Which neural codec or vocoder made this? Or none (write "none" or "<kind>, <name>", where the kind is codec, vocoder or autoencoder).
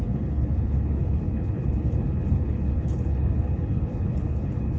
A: codec, HILCodec